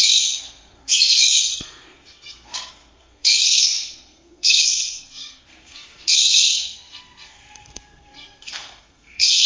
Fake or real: fake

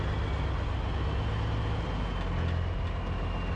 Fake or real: real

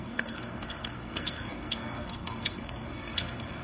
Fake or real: fake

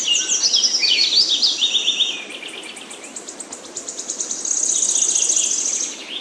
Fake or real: real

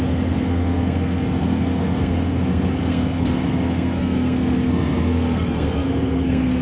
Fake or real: fake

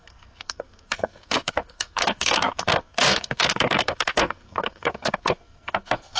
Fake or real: fake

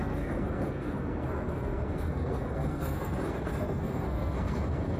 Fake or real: fake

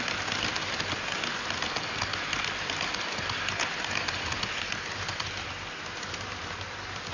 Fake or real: real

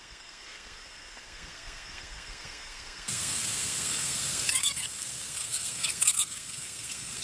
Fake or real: fake